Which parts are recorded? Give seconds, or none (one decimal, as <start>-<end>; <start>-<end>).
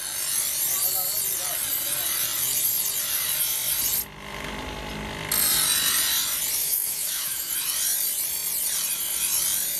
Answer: 0.0-6.6; 7.5-9.8